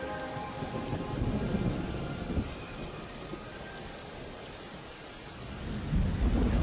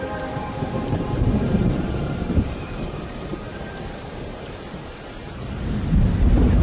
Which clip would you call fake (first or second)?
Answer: second